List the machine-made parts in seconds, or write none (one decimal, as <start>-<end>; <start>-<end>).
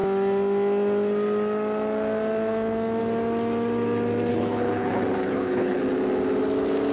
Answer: 4.3-5.8